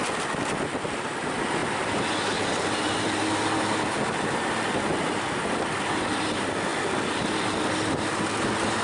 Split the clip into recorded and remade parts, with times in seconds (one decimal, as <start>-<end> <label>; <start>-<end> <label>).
0.0-8.8 recorded